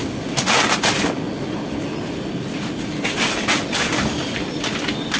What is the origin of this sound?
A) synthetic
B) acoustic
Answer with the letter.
B